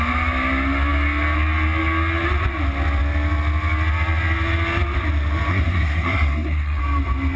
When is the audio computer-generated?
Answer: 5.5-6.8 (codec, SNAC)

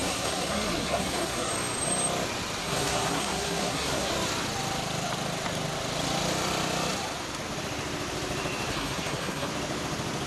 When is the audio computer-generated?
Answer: 0.0-1.5 (codec, SNAC); 2.6-4.1; 8.7-9.5

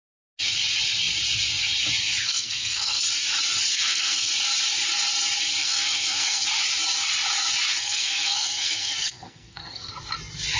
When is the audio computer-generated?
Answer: 2.2-3.0 (codec, SNAC); 3.7-4.3; 5.6-6.4; 7.7-9.9

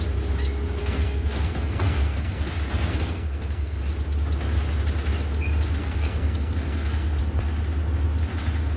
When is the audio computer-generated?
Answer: 0.8-2.5 (codec, SNAC); 2.9-3.8; 5.8-7.2